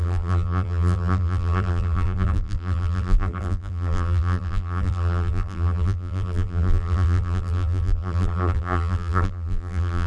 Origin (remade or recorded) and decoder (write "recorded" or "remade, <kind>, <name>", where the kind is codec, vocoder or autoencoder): remade, vocoder, BigVGAN v2